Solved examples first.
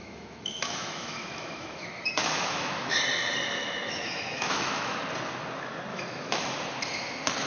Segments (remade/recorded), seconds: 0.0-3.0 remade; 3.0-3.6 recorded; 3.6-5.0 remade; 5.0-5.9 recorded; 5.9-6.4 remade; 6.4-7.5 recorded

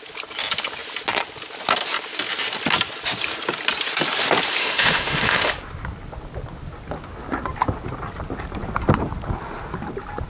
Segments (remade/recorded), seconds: 0.0-4.6 recorded; 4.6-5.5 remade; 5.5-10.3 recorded

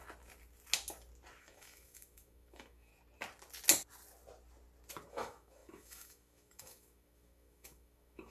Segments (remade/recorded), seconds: 0.0-1.4 recorded; 1.4-2.9 remade; 2.9-5.1 recorded; 5.1-8.3 remade

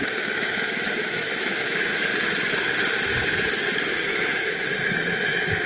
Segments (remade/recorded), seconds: 0.0-2.1 remade; 2.1-4.1 recorded; 4.1-5.7 remade

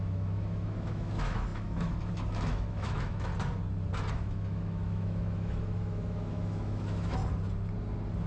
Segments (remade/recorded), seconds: 0.0-3.3 remade; 3.3-4.1 recorded; 4.1-7.2 remade; 7.2-8.3 recorded

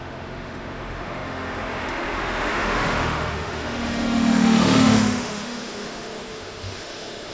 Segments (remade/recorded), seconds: 0.0-7.3 remade

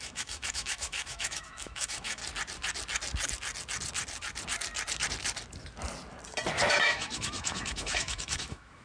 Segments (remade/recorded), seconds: 0.0-2.2 remade; 2.2-6.7 recorded; 6.7-8.8 remade